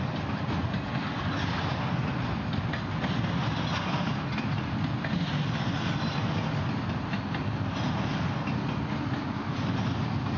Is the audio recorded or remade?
recorded